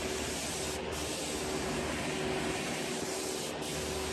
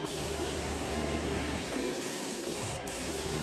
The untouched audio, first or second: first